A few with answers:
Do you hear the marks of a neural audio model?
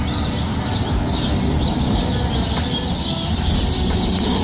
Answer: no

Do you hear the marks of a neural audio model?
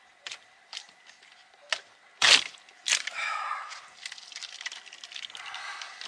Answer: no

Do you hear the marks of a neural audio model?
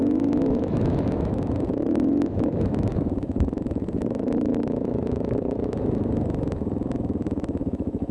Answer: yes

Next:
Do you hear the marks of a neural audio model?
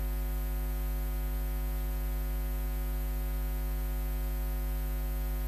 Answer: no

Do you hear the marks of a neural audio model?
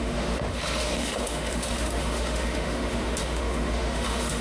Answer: yes